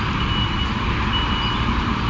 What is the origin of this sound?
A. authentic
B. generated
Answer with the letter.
A